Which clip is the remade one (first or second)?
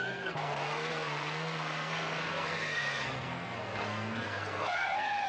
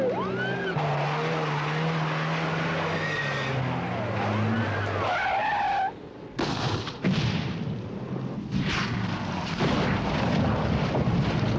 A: first